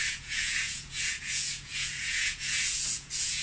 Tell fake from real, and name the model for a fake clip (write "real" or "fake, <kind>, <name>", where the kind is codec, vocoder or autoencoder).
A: fake, vocoder, Vocos